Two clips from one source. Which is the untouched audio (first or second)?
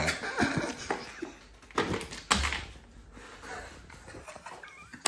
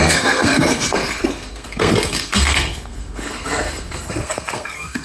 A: first